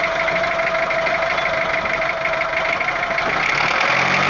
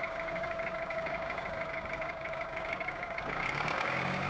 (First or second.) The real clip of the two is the first